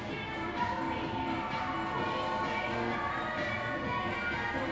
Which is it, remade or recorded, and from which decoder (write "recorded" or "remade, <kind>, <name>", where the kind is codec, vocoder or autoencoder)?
recorded